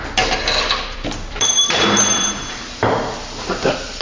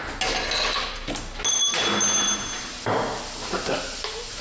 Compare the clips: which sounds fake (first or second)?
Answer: first